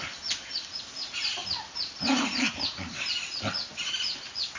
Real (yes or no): yes